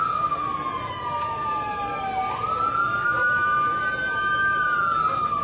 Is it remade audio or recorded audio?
recorded